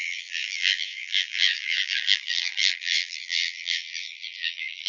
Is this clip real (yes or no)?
no